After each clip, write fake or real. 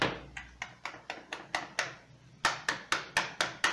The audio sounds real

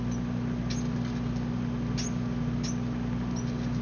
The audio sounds real